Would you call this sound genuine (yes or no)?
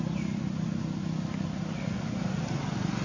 yes